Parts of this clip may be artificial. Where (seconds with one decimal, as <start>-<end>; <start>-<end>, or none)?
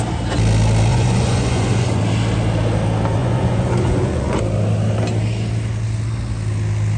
0.9-2.0; 3.2-4.4